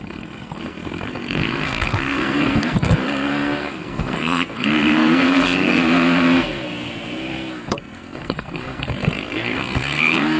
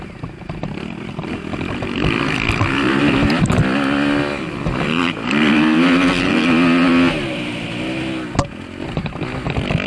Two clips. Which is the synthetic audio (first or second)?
first